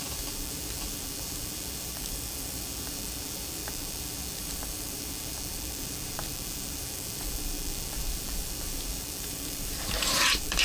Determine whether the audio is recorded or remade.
remade